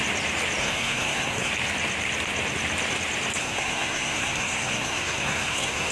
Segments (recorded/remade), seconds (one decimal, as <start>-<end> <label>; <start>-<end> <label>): 0.0-0.6 recorded; 0.6-1.5 remade; 1.5-3.4 recorded; 3.4-5.9 remade